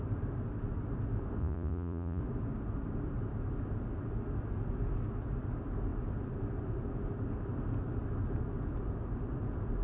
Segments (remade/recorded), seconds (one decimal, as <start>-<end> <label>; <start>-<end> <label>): 0.0-1.4 recorded; 1.4-2.2 remade; 2.2-9.8 recorded